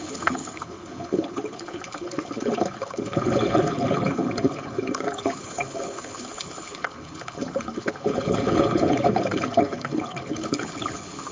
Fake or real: fake